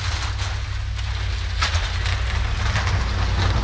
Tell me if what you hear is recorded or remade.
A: recorded